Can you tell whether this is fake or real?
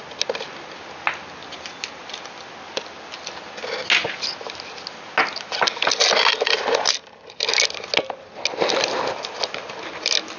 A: real